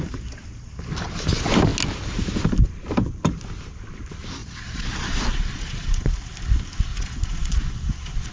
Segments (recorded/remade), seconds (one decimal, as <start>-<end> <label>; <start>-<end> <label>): 0.0-4.4 recorded; 4.4-6.3 remade; 6.3-6.9 recorded; 6.9-8.3 remade